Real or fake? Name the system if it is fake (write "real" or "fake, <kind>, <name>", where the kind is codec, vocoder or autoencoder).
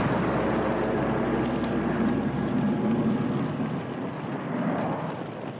real